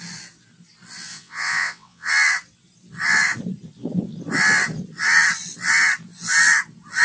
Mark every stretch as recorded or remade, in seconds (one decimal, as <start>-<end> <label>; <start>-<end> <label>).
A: 0.0-1.1 recorded; 1.1-2.1 remade; 2.1-7.0 recorded